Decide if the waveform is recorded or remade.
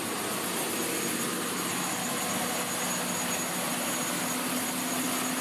recorded